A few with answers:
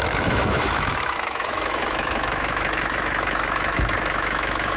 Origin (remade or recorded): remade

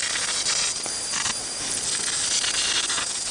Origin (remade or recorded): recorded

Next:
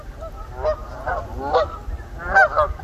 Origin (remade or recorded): recorded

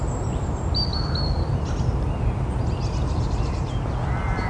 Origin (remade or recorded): recorded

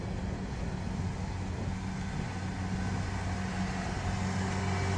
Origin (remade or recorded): recorded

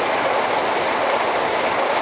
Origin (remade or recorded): recorded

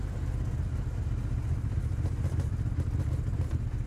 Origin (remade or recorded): recorded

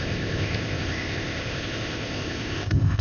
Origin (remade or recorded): remade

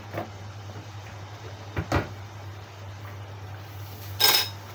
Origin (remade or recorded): recorded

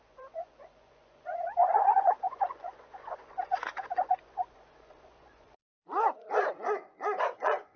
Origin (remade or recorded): remade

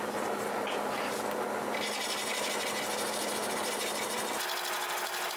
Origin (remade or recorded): recorded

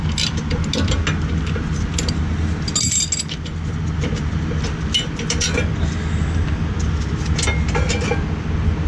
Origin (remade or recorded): recorded